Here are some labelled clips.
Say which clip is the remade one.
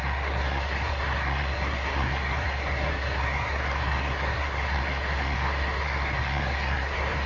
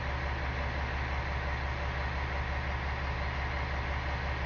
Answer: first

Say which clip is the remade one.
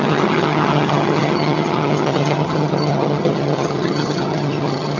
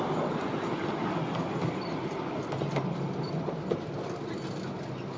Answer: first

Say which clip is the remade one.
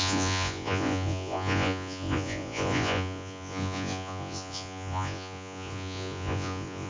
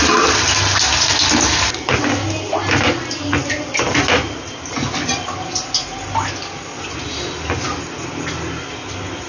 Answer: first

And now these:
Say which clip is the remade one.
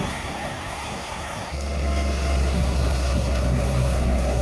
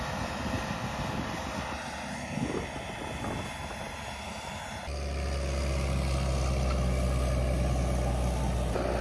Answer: first